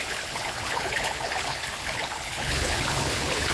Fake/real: fake